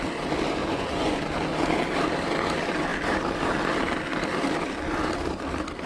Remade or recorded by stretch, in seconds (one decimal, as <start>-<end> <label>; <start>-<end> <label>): 0.0-0.6 recorded; 0.6-1.2 remade; 1.2-5.9 recorded